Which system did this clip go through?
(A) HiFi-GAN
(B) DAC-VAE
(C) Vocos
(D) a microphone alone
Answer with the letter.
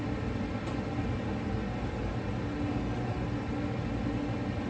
D